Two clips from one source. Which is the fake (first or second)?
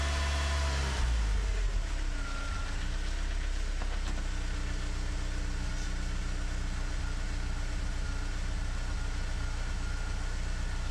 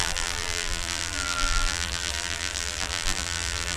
second